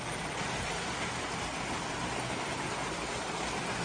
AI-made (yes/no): no